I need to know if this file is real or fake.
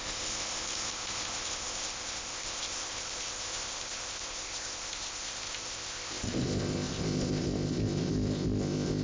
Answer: fake